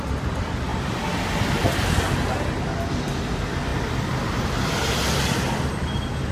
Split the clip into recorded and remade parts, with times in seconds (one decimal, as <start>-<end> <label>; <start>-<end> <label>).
0.0-6.3 recorded